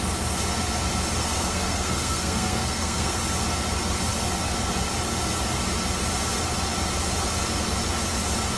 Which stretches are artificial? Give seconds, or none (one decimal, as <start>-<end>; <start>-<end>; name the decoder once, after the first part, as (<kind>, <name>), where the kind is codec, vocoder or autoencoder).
1.2-3.2 (codec, SNAC)